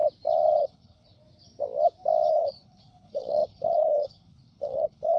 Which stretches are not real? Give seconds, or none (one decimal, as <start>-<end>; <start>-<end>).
0.6-1.2; 2.3-5.2

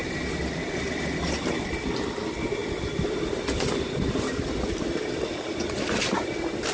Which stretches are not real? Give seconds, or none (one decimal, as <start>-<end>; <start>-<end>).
none